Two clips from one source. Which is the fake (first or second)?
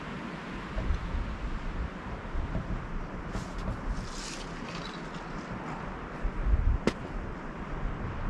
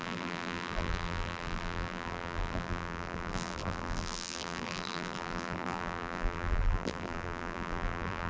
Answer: second